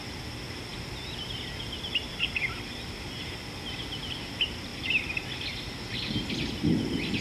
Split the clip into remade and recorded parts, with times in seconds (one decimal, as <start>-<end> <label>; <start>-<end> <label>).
0.0-4.7 recorded; 4.7-5.7 remade; 5.7-7.2 recorded